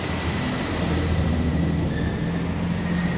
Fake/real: real